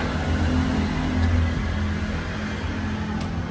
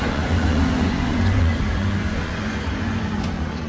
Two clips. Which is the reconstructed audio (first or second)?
second